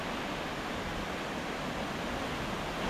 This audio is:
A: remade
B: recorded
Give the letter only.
B